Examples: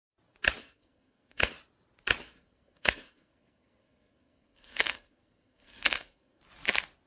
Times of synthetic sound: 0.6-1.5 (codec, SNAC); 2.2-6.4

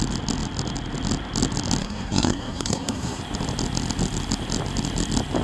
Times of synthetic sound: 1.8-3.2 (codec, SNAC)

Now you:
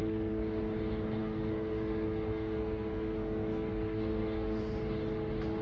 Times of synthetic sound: 0.0-0.6 (codec, SNAC); 1.2-4.6

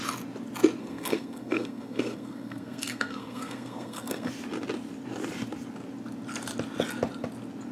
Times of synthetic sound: 0.8-4.3 (codec, SNAC)